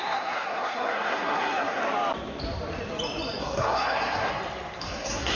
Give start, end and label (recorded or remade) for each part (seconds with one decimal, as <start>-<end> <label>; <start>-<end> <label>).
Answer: 0.0-1.8 remade; 1.8-3.4 recorded; 3.4-4.3 remade; 4.3-4.8 recorded; 4.8-5.4 remade